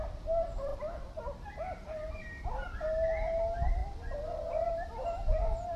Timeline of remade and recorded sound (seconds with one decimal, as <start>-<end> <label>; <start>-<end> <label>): 0.0-0.7 recorded; 0.7-1.4 remade; 1.4-5.8 recorded